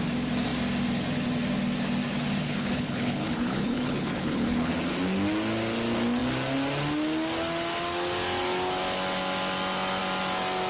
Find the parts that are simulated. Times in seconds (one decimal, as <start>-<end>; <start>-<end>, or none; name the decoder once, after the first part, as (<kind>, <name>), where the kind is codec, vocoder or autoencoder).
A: 2.4-4.7 (codec, HILCodec)